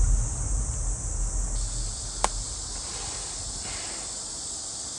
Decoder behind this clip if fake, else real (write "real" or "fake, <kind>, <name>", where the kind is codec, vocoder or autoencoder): real